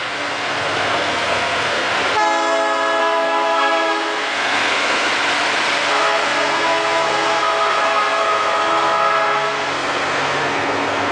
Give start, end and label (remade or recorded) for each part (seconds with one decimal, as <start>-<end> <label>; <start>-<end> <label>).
0.0-1.9 remade; 1.9-3.0 recorded; 3.0-5.1 remade; 5.1-5.9 recorded; 5.9-11.1 remade